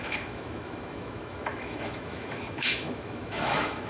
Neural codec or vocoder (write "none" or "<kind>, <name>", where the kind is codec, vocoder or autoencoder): autoencoder, DAC-VAE